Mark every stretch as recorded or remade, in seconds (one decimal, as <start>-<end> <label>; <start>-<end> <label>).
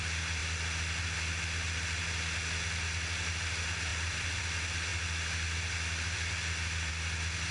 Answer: 0.0-3.9 recorded; 3.9-4.4 remade; 4.4-7.5 recorded